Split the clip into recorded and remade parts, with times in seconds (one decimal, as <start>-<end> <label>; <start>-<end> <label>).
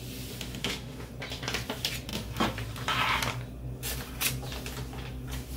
0.0-0.6 recorded; 0.6-1.1 remade; 1.1-5.6 recorded